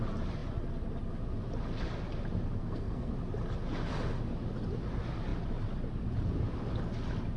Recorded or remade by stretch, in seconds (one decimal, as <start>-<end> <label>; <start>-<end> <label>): 0.0-2.6 recorded; 2.6-3.1 remade; 3.1-7.4 recorded